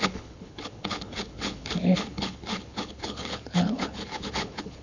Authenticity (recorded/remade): remade